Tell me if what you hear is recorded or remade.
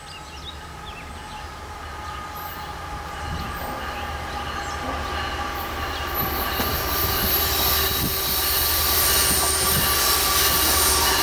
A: recorded